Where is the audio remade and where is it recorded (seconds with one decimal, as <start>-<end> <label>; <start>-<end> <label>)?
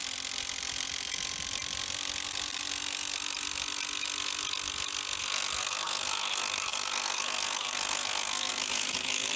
0.0-5.2 recorded; 5.2-9.4 remade